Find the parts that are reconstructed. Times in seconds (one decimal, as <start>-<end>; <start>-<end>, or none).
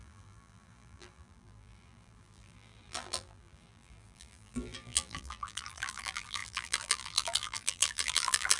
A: 0.0-8.6